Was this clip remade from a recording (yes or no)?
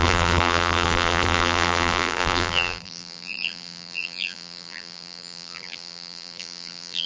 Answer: yes